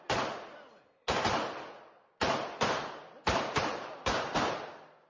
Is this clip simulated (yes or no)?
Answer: no